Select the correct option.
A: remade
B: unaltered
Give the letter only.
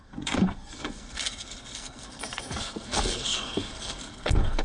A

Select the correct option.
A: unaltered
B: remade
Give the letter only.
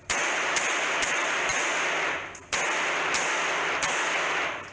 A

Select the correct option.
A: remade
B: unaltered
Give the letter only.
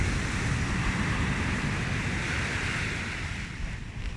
B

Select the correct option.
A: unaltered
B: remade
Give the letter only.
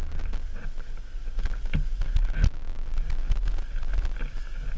A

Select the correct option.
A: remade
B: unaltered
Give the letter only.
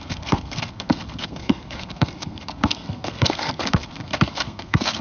A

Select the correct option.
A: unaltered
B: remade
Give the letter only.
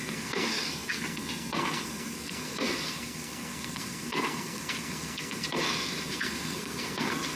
B